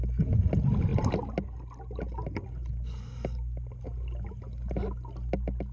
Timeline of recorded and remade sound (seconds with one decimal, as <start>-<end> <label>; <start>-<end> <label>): 0.0-5.7 recorded